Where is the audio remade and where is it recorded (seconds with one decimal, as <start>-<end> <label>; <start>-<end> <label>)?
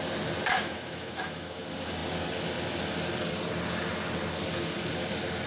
0.0-0.5 recorded; 0.5-1.6 remade; 1.6-5.5 recorded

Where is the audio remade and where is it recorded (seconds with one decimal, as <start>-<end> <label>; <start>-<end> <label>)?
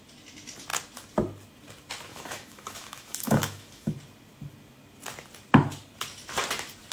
0.0-2.1 recorded; 2.1-3.9 remade; 3.9-6.9 recorded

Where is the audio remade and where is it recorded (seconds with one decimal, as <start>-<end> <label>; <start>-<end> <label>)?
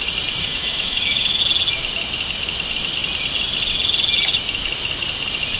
0.0-0.4 recorded; 0.4-1.4 remade; 1.4-5.6 recorded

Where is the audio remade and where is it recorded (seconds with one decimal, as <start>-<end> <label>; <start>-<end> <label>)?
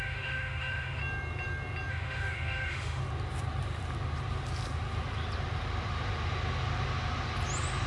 0.0-1.0 remade; 1.0-1.9 recorded; 1.9-3.0 remade; 3.0-7.9 recorded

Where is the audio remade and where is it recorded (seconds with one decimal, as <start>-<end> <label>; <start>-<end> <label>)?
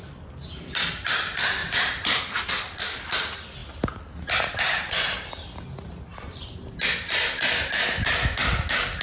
0.0-9.0 recorded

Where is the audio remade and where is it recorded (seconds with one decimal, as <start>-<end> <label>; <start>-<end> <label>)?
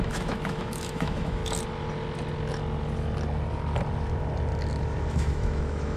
0.0-1.4 remade; 1.4-5.0 recorded; 5.0-6.0 remade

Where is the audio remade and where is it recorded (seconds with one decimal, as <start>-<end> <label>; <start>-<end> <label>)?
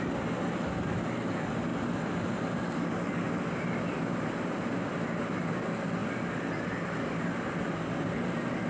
0.0-8.7 recorded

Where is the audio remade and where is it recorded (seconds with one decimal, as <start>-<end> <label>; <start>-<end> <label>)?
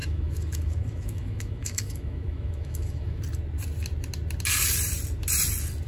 0.0-3.2 remade; 3.2-5.9 recorded